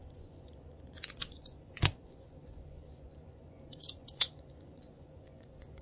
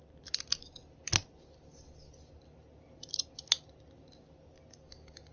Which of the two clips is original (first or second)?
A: second